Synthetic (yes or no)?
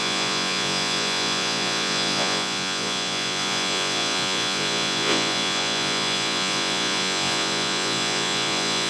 yes